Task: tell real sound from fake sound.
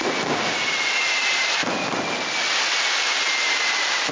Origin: real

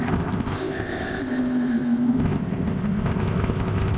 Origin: fake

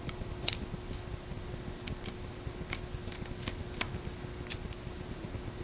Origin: real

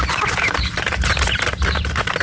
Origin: real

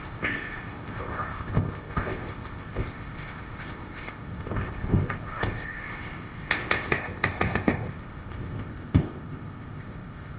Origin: fake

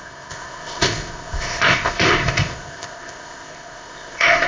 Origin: fake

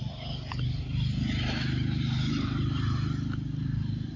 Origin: real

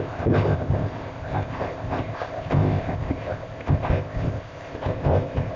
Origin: fake